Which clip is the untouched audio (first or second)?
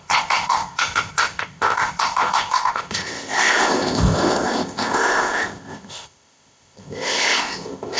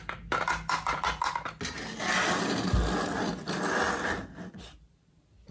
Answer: second